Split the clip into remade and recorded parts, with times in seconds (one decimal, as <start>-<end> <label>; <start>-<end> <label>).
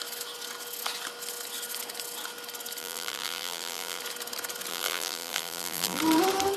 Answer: 0.0-2.8 recorded; 2.8-4.0 remade; 4.0-4.7 recorded; 4.7-6.0 remade; 6.0-6.6 recorded